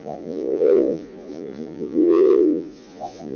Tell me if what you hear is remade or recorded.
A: remade